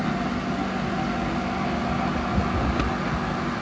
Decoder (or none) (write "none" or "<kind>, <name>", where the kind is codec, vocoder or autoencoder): none